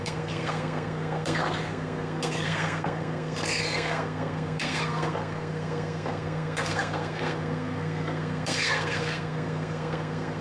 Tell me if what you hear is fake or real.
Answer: fake